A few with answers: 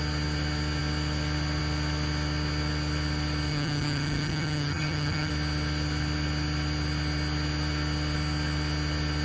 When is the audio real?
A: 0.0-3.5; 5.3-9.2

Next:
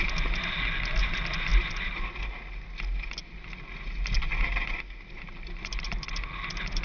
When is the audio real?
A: 0.0-6.8